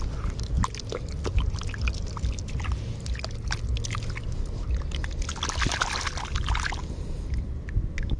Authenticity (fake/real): real